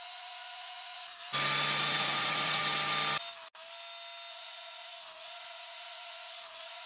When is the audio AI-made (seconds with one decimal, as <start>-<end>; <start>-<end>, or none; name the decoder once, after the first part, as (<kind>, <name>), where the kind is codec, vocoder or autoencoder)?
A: 0.0-1.1 (vocoder, Vocos); 1.8-2.6; 4.3-6.9